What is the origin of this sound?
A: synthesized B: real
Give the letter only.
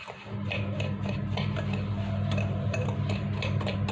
B